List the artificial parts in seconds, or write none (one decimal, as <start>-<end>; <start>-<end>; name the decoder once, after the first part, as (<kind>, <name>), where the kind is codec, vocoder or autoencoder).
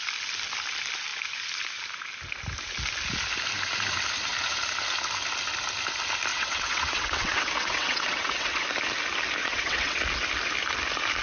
6.3-8.6 (vocoder, WaveNeXt); 9.4-10.0